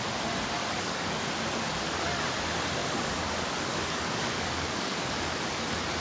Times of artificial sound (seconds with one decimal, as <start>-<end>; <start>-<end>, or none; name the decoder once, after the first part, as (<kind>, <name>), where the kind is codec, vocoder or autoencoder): 0.6-1.3 (codec, DAC); 2.8-5.4